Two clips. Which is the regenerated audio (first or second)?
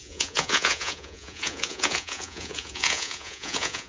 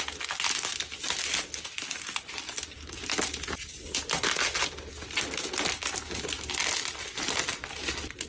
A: first